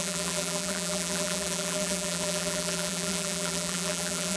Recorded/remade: remade